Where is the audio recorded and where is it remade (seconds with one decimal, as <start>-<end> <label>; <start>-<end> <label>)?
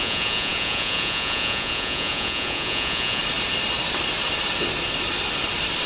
0.0-3.2 remade; 3.2-5.9 recorded